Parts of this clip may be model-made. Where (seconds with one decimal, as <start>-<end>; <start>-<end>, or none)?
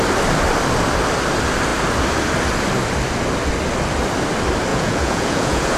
4.7-5.8